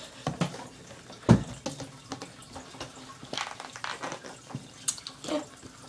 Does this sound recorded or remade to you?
recorded